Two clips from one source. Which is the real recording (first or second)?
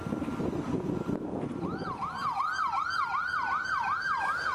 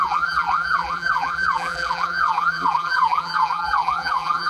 first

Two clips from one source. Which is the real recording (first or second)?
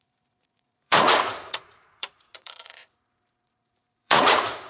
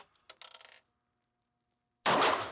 second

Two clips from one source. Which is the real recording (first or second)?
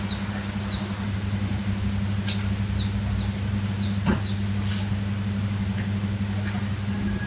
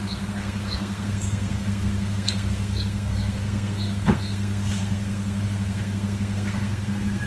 first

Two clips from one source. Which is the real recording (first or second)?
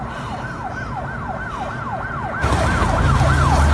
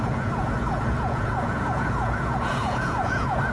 first